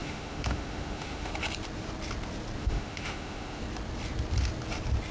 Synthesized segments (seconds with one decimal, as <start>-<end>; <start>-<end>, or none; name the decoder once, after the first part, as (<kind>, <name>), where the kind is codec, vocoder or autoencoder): 0.0-1.3 (autoencoder, DAC-VAE); 2.6-3.6